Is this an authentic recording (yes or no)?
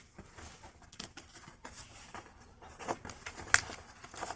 yes